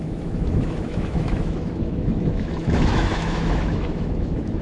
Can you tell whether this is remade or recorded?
remade